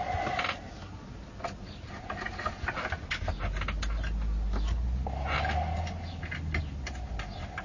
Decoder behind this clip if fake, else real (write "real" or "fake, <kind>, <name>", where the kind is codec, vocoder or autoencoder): real